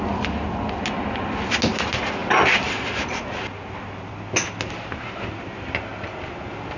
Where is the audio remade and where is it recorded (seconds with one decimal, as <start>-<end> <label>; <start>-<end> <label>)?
0.0-6.8 recorded